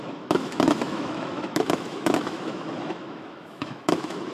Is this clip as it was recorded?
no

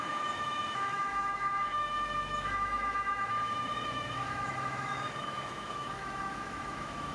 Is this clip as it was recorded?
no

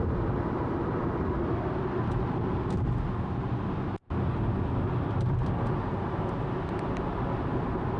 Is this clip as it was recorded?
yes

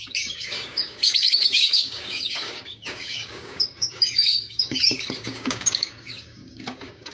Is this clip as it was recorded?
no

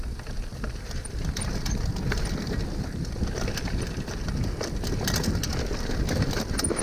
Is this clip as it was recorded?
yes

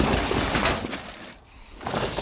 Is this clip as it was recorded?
yes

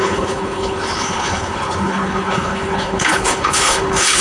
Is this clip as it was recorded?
no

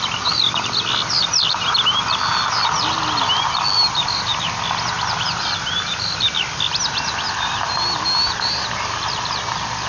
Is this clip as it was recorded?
yes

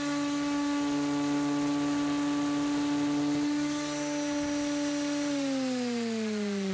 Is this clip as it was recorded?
yes